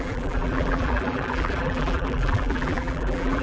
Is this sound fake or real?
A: fake